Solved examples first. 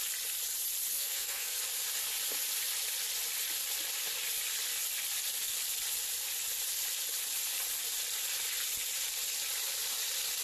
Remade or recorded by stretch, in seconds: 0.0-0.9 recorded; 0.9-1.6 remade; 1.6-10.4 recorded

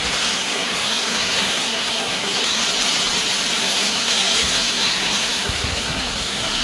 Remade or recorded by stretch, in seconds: 0.0-2.6 remade; 2.6-3.6 recorded; 3.6-6.6 remade